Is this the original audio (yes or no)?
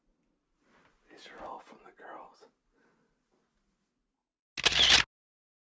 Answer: yes